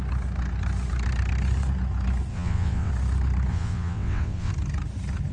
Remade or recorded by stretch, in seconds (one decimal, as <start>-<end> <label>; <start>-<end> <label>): 0.0-2.3 recorded; 2.3-2.9 remade; 2.9-3.5 recorded; 3.5-4.5 remade; 4.5-5.3 recorded